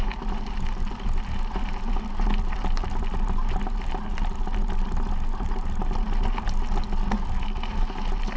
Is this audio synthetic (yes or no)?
no